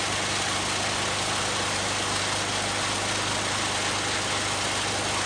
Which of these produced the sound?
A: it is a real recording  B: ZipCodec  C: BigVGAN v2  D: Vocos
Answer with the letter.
A